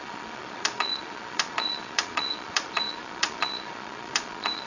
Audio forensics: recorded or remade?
remade